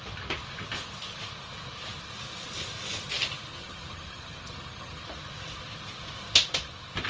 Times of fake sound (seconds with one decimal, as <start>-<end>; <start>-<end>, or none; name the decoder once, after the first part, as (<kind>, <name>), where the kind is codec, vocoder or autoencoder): 3.5-5.0 (vocoder, HiFi-GAN)